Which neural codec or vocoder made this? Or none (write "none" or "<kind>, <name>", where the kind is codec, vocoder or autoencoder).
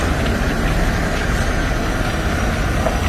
vocoder, BigVGAN v2